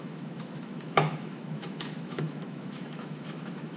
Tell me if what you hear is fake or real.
fake